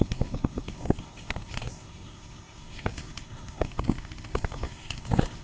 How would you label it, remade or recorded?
remade